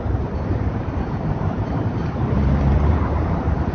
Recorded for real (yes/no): no